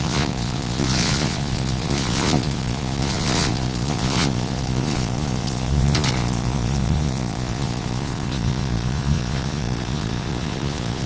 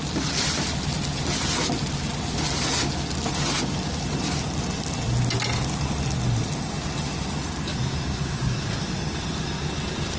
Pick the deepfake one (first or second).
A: first